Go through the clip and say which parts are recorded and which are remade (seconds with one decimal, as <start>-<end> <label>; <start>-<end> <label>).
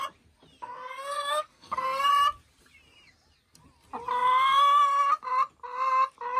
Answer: 0.0-0.6 recorded; 0.6-2.1 remade; 2.1-6.4 recorded